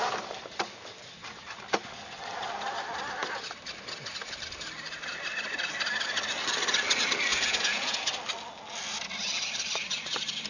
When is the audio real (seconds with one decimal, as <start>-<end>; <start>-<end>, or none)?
0.0-7.3; 8.0-10.5